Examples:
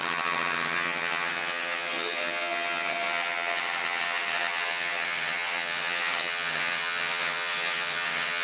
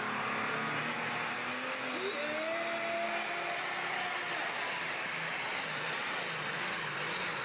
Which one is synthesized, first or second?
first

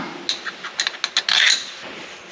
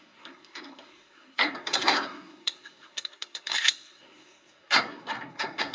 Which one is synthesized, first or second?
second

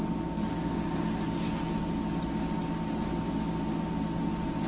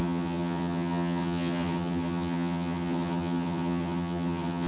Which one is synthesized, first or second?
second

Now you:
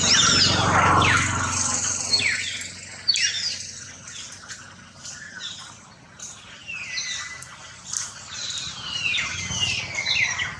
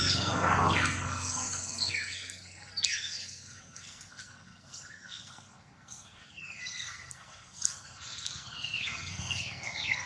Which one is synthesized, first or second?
second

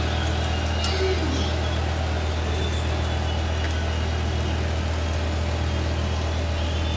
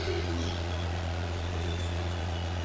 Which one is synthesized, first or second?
second